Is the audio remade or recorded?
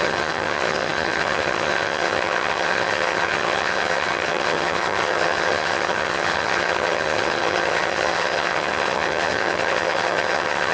remade